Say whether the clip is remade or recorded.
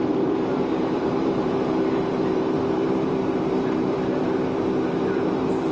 remade